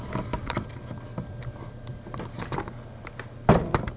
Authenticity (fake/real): real